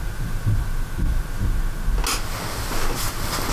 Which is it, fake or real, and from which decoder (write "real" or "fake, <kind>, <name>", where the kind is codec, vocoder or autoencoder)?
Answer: real